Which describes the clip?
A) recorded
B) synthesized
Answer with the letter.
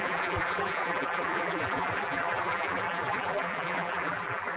B